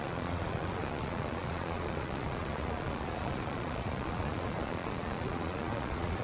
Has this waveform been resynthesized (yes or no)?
yes